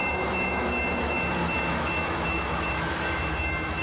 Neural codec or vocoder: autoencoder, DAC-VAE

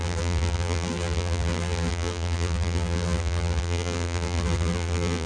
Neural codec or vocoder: vocoder, BigVGAN v2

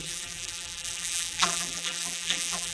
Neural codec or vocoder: vocoder, BigVGAN v2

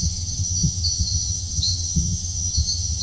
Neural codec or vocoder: vocoder, HiFi-GAN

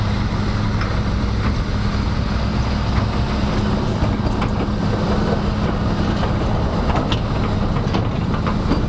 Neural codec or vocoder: none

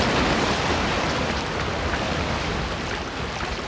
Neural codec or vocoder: none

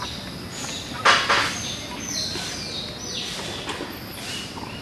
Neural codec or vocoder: none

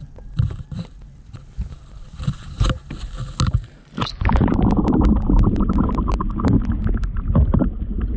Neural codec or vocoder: none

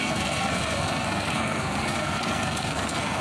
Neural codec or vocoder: codec, SNAC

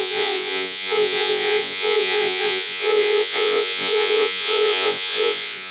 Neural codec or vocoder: vocoder, Vocos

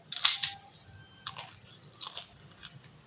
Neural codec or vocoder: none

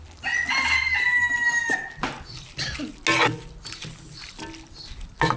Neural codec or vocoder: none